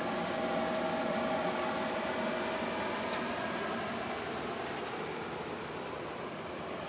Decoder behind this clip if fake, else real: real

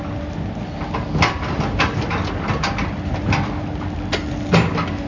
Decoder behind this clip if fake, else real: real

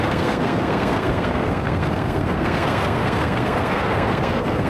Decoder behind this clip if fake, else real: fake, codec, SNAC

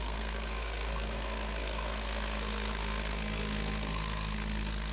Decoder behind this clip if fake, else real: fake, codec, SNAC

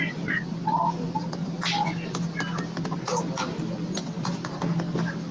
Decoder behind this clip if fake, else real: real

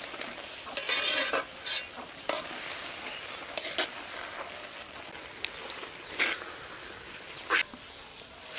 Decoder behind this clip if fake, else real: real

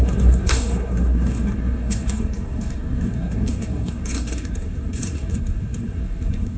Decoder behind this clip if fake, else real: fake, codec, SNAC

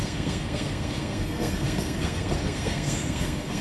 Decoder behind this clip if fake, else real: fake, codec, SNAC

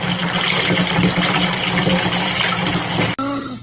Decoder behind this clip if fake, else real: real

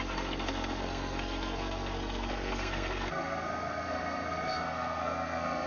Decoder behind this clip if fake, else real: fake, codec, SNAC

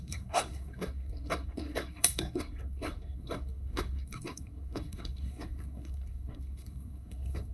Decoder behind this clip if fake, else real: fake, codec, SNAC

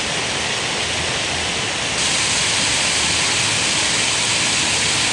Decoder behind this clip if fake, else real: real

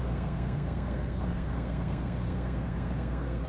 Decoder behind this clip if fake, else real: fake, codec, SNAC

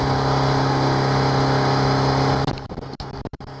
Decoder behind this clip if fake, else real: real